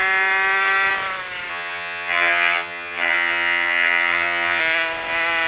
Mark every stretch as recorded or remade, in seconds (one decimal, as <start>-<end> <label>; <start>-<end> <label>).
0.0-1.5 recorded; 1.5-4.6 remade; 4.6-5.5 recorded